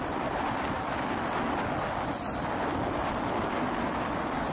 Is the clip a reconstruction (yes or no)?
no